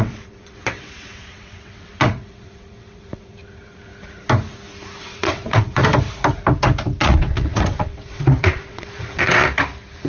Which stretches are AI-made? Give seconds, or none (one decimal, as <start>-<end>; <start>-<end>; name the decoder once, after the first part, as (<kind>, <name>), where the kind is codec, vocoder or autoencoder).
0.0-3.9 (vocoder, WaveNeXt); 5.0-5.8; 7.0-9.4